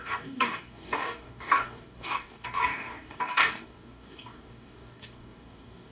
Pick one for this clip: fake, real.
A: fake